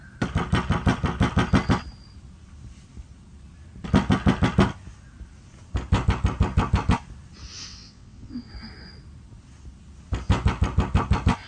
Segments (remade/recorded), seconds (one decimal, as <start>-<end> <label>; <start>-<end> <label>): 0.0-7.7 recorded; 7.7-8.5 remade; 8.5-11.5 recorded